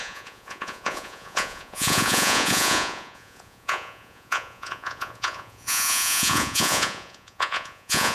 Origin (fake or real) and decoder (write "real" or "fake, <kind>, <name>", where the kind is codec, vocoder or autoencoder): fake, vocoder, Vocos